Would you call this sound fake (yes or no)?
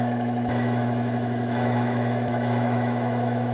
yes